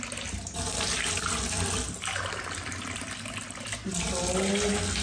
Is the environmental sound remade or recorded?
recorded